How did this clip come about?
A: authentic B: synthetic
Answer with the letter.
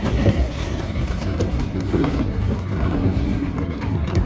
B